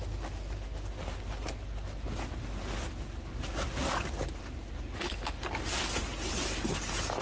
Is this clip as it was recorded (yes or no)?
yes